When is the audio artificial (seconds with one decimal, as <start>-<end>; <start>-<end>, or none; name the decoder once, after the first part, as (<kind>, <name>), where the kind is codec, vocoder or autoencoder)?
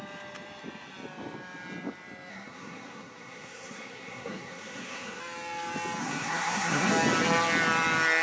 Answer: 2.3-5.2 (codec, SNAC); 6.0-6.9